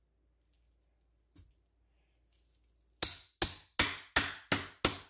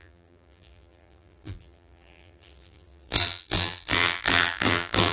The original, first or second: first